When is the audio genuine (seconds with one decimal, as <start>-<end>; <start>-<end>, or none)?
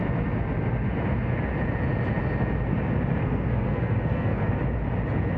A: 0.0-3.2; 4.5-5.4